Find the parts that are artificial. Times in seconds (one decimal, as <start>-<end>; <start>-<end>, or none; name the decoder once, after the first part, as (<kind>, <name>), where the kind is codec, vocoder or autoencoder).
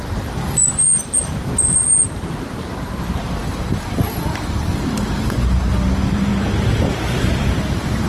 0.0-8.1 (vocoder, BigVGAN v2)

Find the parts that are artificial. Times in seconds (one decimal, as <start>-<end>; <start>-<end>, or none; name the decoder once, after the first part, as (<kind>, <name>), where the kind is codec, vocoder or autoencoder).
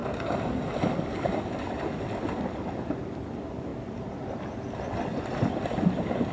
none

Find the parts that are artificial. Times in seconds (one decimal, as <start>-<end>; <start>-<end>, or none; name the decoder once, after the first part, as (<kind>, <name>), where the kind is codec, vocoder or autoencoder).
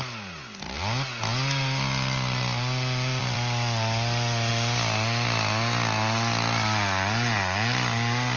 3.2-4.5 (vocoder, BigVGAN v2)